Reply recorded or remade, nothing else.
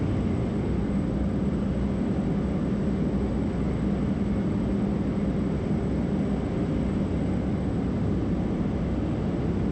recorded